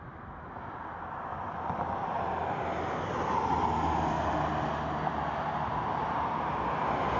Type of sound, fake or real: real